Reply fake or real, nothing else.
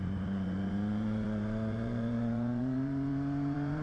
fake